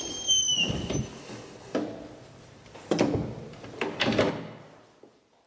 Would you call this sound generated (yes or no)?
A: yes